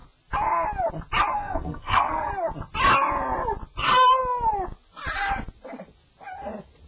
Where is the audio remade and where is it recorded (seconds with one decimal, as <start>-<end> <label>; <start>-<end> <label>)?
0.0-1.3 recorded; 1.3-2.3 remade; 2.3-6.9 recorded